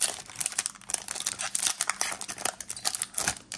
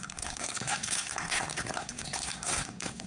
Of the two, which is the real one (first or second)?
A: first